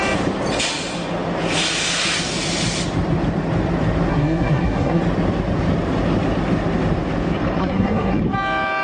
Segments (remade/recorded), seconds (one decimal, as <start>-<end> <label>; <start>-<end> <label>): 0.0-4.1 recorded; 4.1-5.0 remade; 5.0-7.6 recorded; 7.6-8.2 remade; 8.2-8.8 recorded